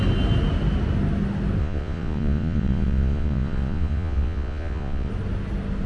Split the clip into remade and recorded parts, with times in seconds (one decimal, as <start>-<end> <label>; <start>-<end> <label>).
0.0-1.6 recorded; 1.6-5.1 remade; 5.1-5.9 recorded